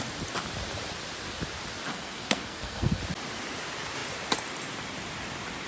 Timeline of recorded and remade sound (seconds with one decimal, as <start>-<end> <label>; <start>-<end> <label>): 0.0-1.9 recorded; 1.9-3.0 remade; 3.0-5.7 recorded